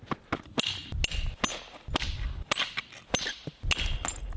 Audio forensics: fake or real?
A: real